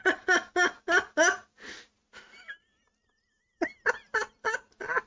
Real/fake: real